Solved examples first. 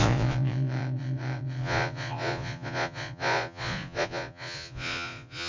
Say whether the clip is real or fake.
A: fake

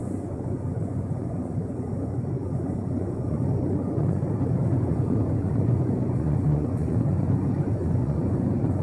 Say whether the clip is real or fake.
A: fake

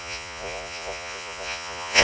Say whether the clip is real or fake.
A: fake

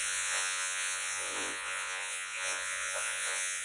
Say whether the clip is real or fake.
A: fake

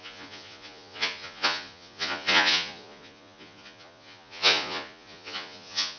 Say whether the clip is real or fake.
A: fake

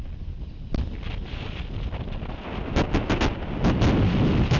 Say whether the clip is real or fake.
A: real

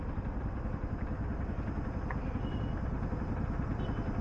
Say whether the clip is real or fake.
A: real